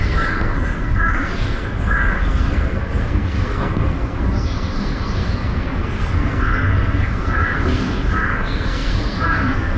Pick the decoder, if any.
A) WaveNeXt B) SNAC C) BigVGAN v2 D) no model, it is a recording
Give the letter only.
B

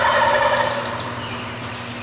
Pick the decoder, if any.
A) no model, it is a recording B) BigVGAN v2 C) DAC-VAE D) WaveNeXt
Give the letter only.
A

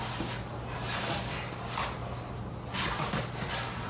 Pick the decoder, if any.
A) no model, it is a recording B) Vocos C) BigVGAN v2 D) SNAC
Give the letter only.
A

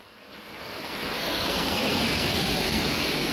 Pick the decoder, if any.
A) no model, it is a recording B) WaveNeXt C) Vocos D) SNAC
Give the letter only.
D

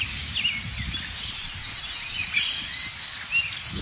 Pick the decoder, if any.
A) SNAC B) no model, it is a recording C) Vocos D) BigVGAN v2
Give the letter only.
B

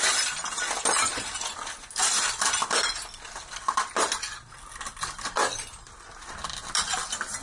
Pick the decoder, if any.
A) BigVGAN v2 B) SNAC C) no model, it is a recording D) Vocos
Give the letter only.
C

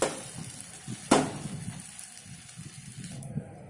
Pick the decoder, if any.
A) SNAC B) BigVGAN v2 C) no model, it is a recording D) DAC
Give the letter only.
C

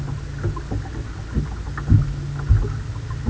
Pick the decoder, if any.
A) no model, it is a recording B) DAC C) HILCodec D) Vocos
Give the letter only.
A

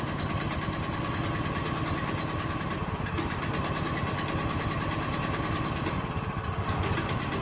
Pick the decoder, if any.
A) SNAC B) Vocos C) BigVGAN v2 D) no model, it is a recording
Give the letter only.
D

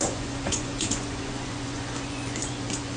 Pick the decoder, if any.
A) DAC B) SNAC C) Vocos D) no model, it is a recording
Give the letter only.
C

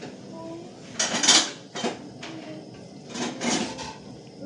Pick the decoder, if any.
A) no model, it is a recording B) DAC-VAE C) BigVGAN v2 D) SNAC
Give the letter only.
A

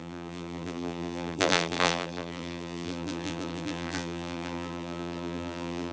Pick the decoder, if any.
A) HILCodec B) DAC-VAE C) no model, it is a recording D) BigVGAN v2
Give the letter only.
D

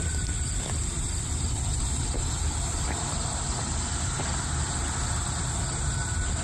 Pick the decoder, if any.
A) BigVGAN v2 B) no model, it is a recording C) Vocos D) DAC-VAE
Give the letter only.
B